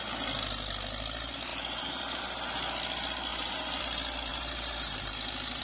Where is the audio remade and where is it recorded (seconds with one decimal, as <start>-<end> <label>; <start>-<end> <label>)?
0.0-1.5 recorded; 1.5-2.0 remade; 2.0-3.3 recorded; 3.3-3.8 remade; 3.8-4.3 recorded; 4.3-5.6 remade